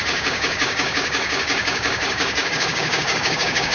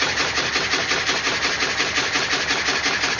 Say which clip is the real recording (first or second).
second